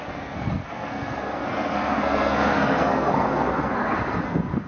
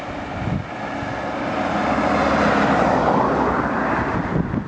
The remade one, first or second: first